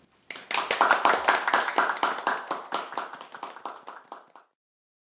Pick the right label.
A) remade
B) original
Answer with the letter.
B